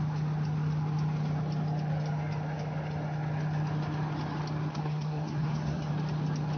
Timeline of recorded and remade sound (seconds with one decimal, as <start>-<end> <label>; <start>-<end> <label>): 0.0-4.7 recorded; 4.7-5.9 remade; 5.9-6.6 recorded